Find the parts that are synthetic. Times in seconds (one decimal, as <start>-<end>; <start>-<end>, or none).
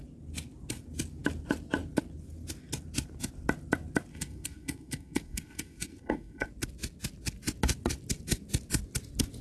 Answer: 4.1-6.5